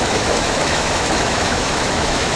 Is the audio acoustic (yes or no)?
no